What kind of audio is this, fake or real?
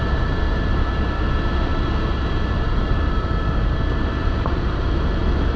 fake